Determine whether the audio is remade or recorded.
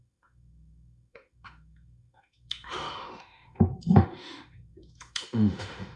remade